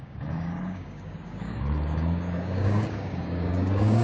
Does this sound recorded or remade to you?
remade